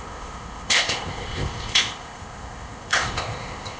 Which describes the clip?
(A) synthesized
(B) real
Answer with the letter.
A